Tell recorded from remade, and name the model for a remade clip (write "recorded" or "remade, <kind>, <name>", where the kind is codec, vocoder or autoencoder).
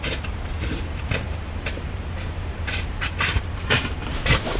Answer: remade, vocoder, BigVGAN v2